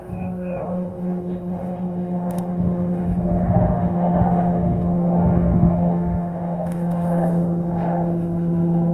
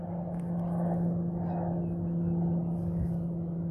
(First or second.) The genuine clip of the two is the second